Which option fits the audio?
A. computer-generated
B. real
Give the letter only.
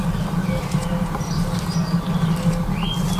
B